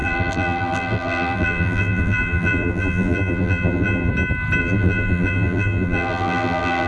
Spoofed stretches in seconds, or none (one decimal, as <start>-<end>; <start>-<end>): 0.0-4.1; 4.6-6.9